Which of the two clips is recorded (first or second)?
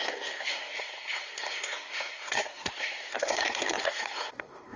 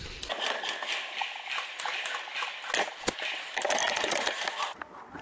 second